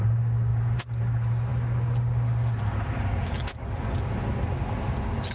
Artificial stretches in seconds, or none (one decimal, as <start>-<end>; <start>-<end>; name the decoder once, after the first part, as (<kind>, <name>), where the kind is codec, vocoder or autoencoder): 0.5-1.0 (vocoder, BigVGAN v2)